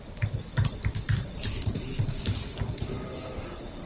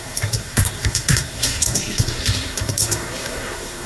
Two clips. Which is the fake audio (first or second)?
second